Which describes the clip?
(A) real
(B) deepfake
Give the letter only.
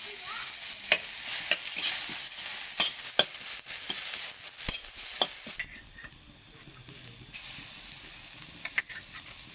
A